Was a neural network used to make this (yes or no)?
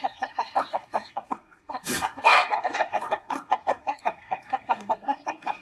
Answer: yes